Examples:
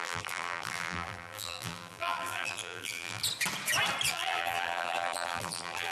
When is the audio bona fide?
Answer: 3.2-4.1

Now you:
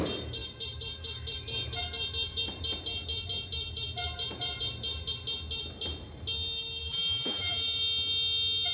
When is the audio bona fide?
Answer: 0.0-6.8; 7.8-8.7

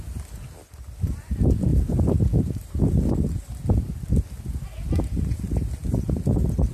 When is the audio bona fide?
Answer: 0.0-1.7; 2.8-6.7

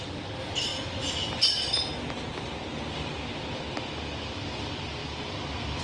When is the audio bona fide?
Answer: 0.7-4.2

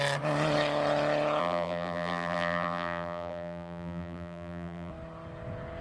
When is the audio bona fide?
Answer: 0.0-1.4; 4.9-5.8